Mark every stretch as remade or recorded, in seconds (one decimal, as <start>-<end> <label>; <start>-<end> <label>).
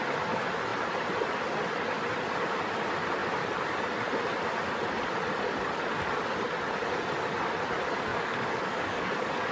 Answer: 0.0-8.1 recorded; 8.1-9.5 remade